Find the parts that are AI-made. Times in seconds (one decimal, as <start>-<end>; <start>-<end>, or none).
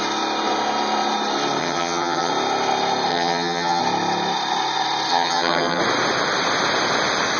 1.6-2.3; 3.1-3.8; 5.1-5.8